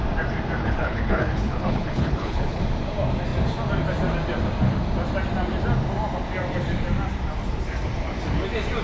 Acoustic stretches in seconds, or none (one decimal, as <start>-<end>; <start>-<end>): 0.0-0.6; 2.6-8.8